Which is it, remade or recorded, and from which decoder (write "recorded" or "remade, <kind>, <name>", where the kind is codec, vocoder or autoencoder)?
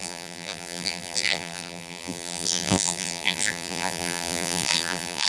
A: remade, vocoder, BigVGAN v2